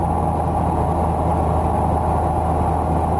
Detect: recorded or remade recorded